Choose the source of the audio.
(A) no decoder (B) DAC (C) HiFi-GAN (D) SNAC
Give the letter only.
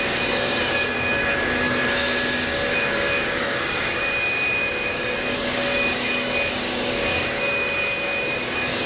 B